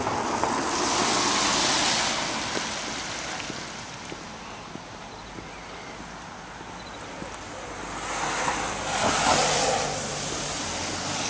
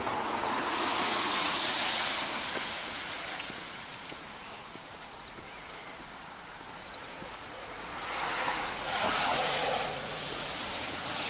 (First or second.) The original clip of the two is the first